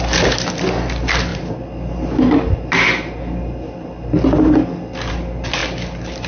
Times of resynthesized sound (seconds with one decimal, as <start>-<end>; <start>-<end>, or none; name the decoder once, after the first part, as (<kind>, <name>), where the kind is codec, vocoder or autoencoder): none